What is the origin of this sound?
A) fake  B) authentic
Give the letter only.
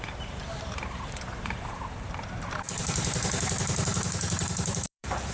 A